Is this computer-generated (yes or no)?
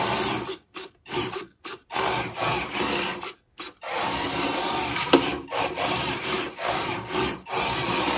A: yes